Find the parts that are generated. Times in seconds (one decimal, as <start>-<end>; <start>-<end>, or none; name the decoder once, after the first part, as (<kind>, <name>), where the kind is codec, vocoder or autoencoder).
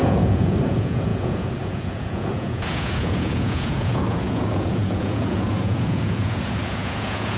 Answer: 0.0-7.4 (vocoder, Vocos)